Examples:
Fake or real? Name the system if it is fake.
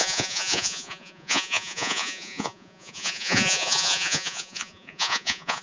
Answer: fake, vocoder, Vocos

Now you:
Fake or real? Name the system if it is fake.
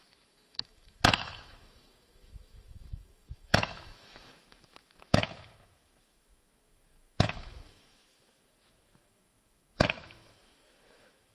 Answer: fake, autoencoder, DAC-VAE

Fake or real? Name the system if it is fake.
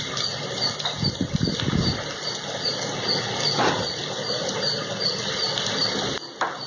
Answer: real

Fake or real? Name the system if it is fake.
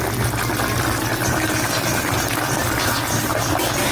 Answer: real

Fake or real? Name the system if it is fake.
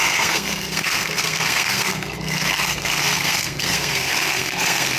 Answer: fake, codec, SNAC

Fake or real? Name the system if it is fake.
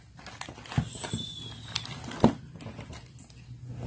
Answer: real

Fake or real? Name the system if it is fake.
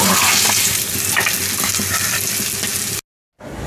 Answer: real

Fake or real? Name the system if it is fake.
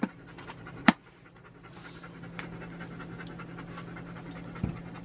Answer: real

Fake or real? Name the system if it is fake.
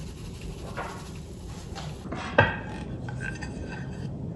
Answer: real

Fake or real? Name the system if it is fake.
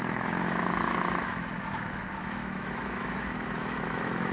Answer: fake, autoencoder, DAC-VAE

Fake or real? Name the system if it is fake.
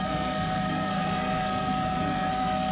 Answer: fake, codec, SNAC